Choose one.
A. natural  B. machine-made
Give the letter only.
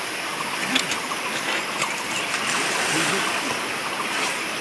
A